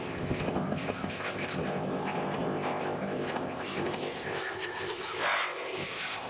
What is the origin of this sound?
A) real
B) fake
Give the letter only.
B